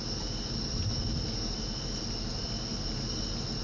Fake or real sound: real